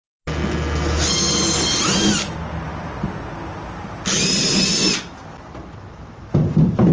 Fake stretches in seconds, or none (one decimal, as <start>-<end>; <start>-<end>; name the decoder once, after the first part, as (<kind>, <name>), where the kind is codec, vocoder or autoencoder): none